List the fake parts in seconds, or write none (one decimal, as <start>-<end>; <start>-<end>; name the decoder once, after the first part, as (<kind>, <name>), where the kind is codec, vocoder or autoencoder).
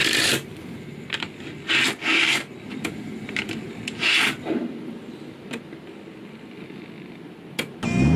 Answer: 0.0-0.6 (vocoder, BigVGAN v2)